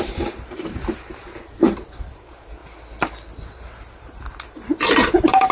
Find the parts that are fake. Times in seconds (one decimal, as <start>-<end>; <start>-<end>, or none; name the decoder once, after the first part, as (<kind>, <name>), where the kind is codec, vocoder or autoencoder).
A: 0.0-1.2 (vocoder, BigVGAN v2); 2.1-2.6; 3.5-5.5